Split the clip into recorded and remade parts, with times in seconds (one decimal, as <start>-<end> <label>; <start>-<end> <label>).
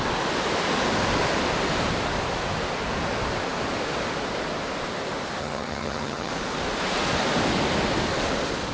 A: 0.0-5.4 recorded; 5.4-6.3 remade; 6.3-8.7 recorded